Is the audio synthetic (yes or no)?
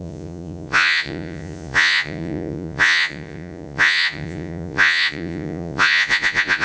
yes